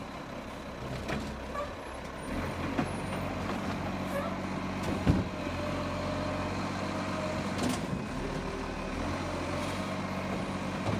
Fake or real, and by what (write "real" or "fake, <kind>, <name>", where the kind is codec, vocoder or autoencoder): real